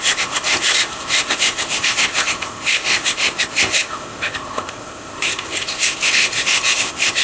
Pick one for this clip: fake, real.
fake